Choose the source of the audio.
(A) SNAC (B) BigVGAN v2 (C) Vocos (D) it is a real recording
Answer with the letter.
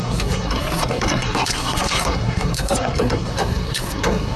A